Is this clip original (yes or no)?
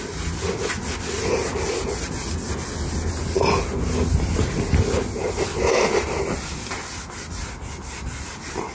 yes